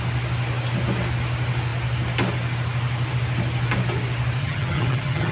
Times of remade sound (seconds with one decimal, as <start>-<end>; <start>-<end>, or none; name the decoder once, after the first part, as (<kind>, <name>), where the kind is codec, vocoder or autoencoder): 4.4-5.3 (vocoder, HiFi-GAN)